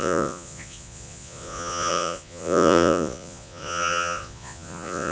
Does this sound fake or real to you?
fake